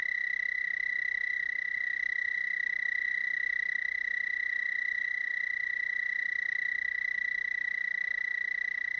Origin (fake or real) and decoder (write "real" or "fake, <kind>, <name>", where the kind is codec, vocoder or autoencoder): real